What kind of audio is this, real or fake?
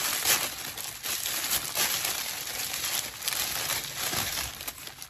real